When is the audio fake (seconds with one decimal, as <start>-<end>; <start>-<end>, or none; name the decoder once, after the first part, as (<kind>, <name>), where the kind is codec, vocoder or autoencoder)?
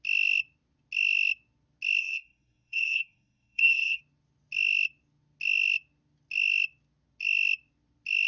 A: 2.0-4.0 (codec, SNAC)